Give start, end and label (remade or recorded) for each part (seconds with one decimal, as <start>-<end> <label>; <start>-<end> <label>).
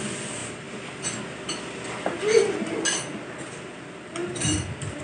0.0-5.0 recorded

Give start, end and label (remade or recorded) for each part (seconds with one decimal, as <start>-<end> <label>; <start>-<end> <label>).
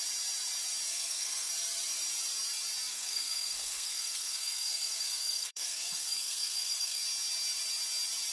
0.0-0.9 recorded; 0.9-1.5 remade; 1.5-2.9 recorded; 2.9-7.0 remade; 7.0-8.3 recorded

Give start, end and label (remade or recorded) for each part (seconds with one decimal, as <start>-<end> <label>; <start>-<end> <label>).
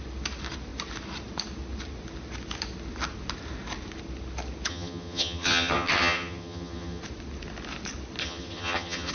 0.0-4.7 recorded; 4.7-7.0 remade; 7.0-8.2 recorded; 8.2-9.1 remade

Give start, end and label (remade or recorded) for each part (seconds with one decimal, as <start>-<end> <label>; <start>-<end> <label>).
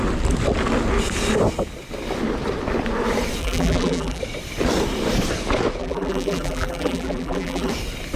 0.0-3.4 recorded; 3.4-4.2 remade; 4.2-5.8 recorded; 5.8-7.7 remade; 7.7-8.2 recorded